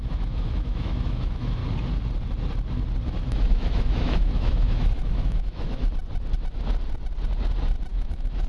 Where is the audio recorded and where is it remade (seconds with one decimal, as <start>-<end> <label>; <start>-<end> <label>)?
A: 0.0-1.6 remade; 1.6-3.3 recorded; 3.3-5.8 remade; 5.8-7.9 recorded; 7.9-8.5 remade

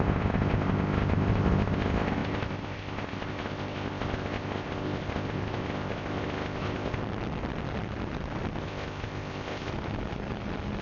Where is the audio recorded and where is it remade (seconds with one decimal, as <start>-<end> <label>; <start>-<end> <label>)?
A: 0.0-7.0 remade; 7.0-8.6 recorded; 8.6-9.7 remade; 9.7-10.8 recorded

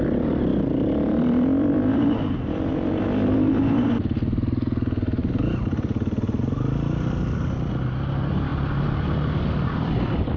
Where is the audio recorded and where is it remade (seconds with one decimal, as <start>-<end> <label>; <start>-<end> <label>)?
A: 0.0-0.5 recorded; 0.5-2.7 remade; 2.7-5.2 recorded; 5.2-6.4 remade; 6.4-10.4 recorded